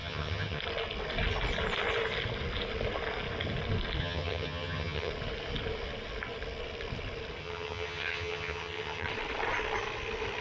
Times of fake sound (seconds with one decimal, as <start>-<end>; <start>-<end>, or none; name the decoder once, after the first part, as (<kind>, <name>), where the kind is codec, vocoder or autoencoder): 0.0-0.6 (vocoder, HiFi-GAN); 4.0-5.1; 7.4-9.1